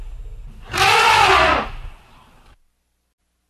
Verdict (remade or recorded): recorded